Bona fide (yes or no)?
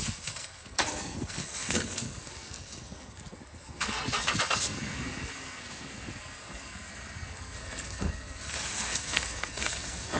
no